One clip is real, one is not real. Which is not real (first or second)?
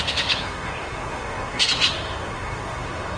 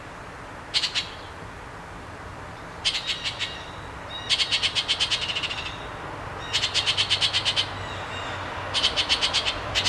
first